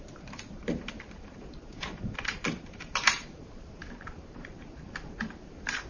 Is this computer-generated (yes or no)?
yes